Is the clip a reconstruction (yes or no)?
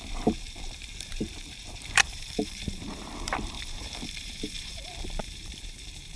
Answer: yes